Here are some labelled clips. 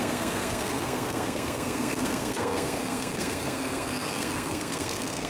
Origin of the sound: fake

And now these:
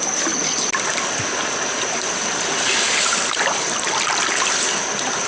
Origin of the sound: real